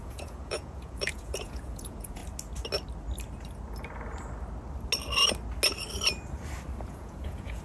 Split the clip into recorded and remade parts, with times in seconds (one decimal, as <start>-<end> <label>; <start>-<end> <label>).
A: 0.0-2.2 remade; 2.2-6.8 recorded; 6.8-7.6 remade